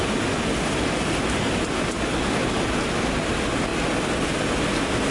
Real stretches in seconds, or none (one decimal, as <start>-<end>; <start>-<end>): 0.0-2.1; 2.7-5.1